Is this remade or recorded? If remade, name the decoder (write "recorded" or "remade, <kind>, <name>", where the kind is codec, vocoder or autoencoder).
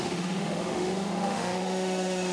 remade, autoencoder, DAC-VAE